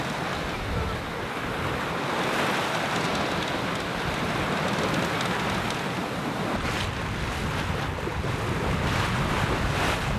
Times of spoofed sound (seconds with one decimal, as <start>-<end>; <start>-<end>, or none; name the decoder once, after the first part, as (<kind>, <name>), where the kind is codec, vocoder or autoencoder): none